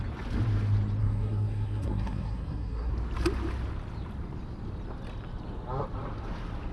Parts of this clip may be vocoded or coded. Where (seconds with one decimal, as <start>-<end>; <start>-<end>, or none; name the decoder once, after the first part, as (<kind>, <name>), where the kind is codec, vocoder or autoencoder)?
1.0-2.9 (codec, SNAC)